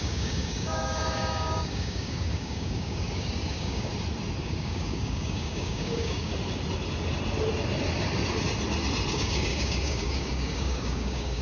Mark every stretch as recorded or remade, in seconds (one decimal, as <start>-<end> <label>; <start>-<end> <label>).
0.0-3.9 remade; 3.9-4.4 recorded; 4.4-6.3 remade; 6.3-9.1 recorded; 9.1-11.4 remade